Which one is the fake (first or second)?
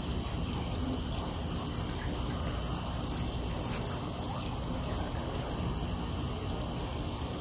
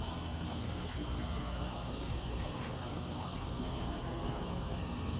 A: second